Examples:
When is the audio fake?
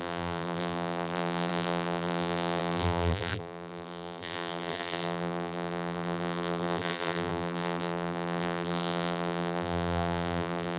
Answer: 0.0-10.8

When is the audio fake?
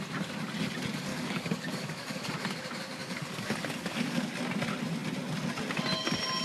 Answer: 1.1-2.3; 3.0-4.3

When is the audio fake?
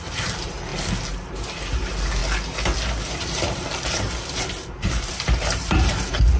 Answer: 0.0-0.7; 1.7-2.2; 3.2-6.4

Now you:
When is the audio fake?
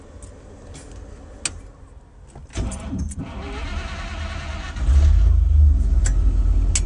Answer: 2.4-3.2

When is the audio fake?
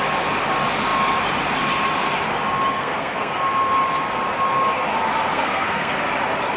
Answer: 2.7-3.3; 5.3-5.9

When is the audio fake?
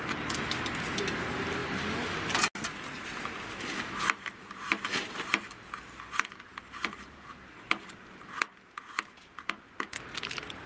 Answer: 6.5-7.9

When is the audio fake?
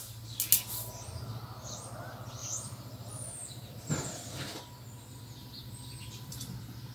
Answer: 2.4-4.6; 5.4-6.4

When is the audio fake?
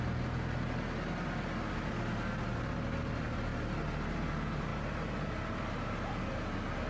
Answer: none